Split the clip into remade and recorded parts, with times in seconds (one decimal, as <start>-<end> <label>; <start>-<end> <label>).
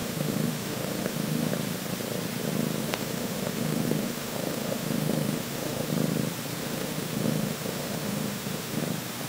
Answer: 0.0-1.5 remade; 1.5-2.8 recorded; 2.8-5.9 remade; 5.9-6.6 recorded; 6.6-8.8 remade; 8.8-9.3 recorded